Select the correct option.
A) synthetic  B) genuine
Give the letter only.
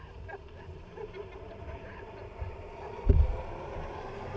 A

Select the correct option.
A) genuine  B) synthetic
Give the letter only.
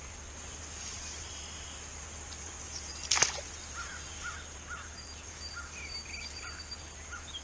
A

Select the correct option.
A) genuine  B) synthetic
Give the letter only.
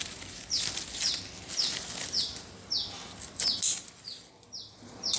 A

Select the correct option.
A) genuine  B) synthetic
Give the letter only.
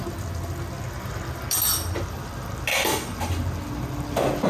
A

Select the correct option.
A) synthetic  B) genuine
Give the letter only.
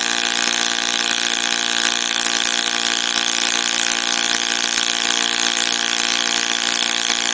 B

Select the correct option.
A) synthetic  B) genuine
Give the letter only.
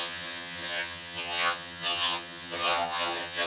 A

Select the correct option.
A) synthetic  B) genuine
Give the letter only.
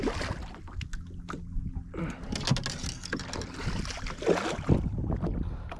B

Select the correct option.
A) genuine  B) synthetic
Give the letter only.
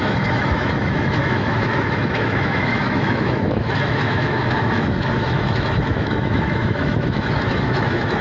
B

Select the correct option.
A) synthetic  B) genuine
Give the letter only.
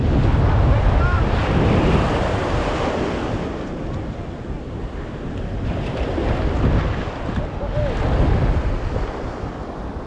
B